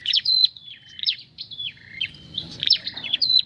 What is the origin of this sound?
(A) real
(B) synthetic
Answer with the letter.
B